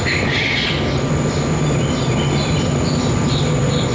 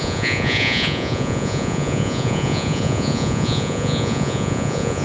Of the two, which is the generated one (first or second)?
second